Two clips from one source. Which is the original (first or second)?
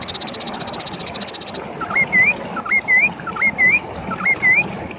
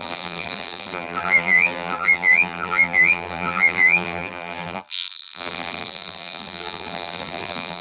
first